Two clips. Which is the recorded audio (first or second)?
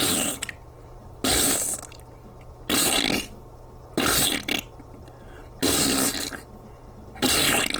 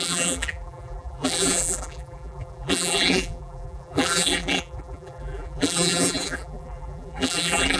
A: first